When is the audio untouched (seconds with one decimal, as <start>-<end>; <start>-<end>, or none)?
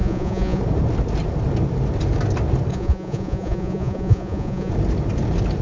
0.6-2.7; 4.7-5.6